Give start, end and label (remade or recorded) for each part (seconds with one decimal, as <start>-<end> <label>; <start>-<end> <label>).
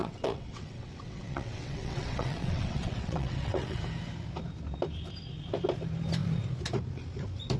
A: 0.0-3.8 remade; 3.8-7.6 recorded